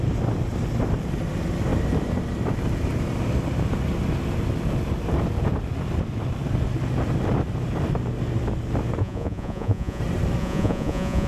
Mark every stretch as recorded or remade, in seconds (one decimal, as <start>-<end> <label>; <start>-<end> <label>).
0.0-9.0 recorded; 9.0-10.0 remade; 10.0-10.4 recorded; 10.4-11.3 remade